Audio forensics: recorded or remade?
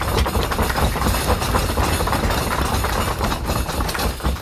recorded